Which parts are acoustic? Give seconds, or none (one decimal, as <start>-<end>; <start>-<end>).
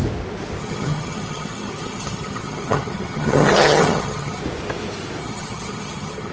0.0-0.6; 4.4-5.2